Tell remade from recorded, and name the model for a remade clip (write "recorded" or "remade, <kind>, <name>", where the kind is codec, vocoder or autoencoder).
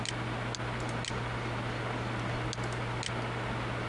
recorded